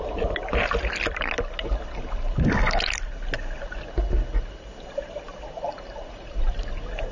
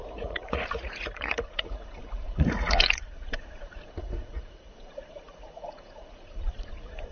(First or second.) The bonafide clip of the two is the first